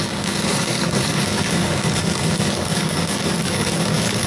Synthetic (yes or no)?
yes